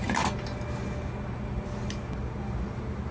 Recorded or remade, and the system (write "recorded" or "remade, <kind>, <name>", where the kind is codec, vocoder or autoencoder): recorded